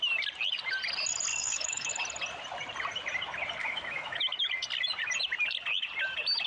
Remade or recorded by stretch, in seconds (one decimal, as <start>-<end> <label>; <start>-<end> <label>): 0.0-1.3 recorded; 1.3-1.9 remade; 1.9-3.6 recorded; 3.6-4.4 remade; 4.4-6.5 recorded

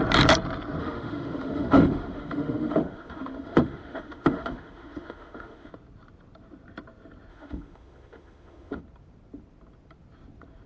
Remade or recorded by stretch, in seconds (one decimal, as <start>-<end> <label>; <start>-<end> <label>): 0.0-0.8 recorded; 0.8-5.7 remade; 5.7-7.3 recorded; 7.3-8.8 remade; 8.8-10.7 recorded

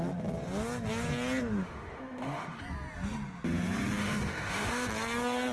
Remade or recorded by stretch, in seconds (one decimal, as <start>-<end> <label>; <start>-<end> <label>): 0.0-1.6 recorded; 1.6-2.6 remade; 2.6-4.0 recorded; 4.0-4.9 remade; 4.9-5.5 recorded

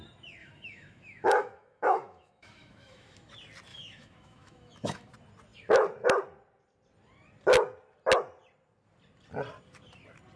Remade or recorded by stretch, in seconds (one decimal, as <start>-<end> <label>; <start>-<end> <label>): 0.0-0.4 recorded; 0.4-3.3 remade; 3.3-3.7 recorded; 3.7-5.1 remade; 5.1-10.4 recorded

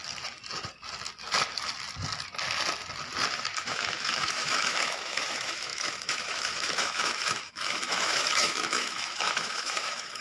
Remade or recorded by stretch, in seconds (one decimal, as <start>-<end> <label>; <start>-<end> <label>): 0.0-3.6 recorded; 3.6-10.2 remade

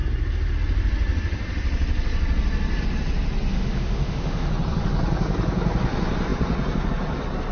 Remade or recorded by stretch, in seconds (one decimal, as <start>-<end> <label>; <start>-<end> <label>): 0.0-3.5 recorded; 3.5-4.5 remade; 4.5-7.5 recorded

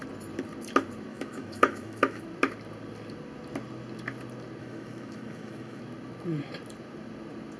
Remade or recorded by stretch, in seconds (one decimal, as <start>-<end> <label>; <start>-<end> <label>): 0.0-1.1 recorded; 1.1-2.2 remade; 2.2-4.6 recorded; 4.6-5.8 remade; 5.8-7.6 recorded

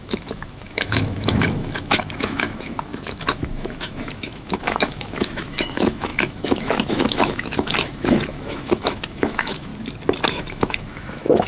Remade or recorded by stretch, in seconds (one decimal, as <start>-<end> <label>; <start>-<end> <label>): 0.0-9.7 remade; 9.7-10.3 recorded; 10.3-11.5 remade